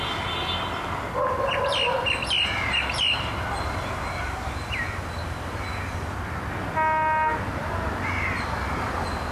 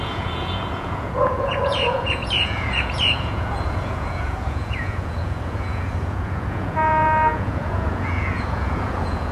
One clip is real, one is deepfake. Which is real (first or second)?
first